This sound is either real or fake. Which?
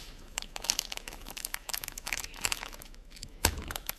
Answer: fake